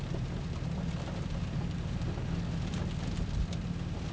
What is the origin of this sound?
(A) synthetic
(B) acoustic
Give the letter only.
B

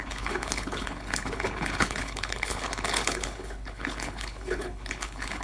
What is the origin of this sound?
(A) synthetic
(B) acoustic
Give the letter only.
A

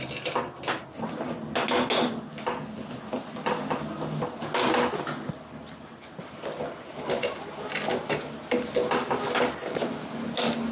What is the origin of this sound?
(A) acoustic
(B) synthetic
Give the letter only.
A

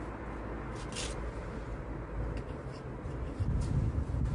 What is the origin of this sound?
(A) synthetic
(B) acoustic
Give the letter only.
B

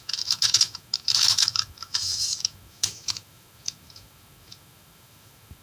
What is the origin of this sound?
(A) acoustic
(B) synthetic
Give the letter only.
B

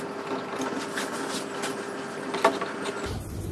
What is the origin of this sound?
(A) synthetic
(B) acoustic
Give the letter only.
B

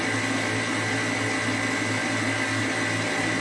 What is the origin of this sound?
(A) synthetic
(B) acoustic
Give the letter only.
B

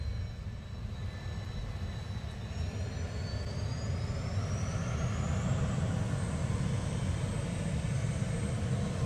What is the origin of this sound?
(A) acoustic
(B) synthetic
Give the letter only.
A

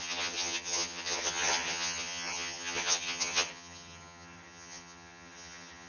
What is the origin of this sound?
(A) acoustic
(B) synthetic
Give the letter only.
B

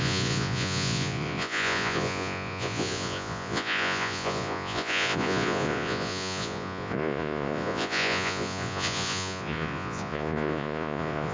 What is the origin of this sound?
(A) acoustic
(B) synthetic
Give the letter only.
B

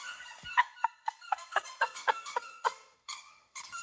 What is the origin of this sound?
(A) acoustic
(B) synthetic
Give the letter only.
B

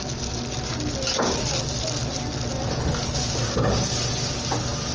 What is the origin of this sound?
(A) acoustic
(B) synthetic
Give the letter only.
A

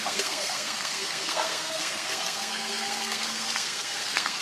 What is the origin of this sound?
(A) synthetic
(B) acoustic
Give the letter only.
A